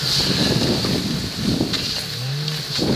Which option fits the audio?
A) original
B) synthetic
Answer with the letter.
A